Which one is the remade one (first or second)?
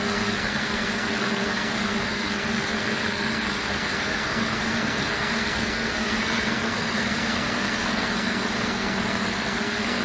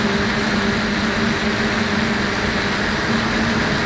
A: first